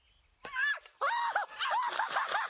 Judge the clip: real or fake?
real